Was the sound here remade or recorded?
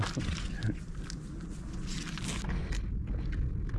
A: recorded